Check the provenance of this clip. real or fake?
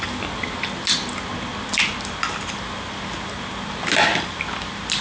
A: real